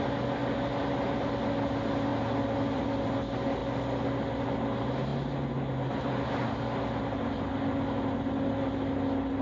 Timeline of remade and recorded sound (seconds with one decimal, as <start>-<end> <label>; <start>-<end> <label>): 0.0-9.4 recorded